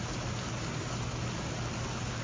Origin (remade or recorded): recorded